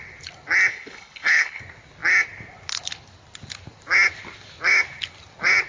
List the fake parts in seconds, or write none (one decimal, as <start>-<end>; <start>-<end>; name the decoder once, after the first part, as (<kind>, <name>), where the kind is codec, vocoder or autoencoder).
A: 0.7-1.6 (codec, HILCodec)